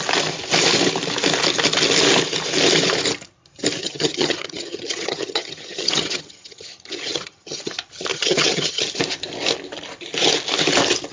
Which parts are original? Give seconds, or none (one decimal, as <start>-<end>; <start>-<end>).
0.0-3.8; 7.7-8.1; 8.8-11.1